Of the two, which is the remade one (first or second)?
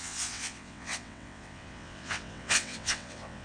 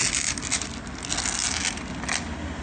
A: first